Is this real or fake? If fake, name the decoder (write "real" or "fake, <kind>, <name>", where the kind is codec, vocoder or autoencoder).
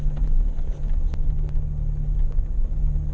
real